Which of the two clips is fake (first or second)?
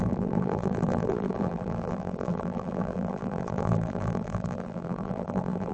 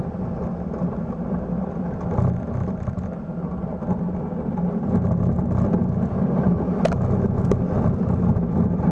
first